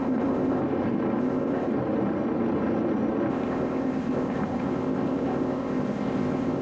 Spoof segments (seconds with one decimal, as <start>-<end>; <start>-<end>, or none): 0.0-0.6; 1.2-1.7; 3.3-6.6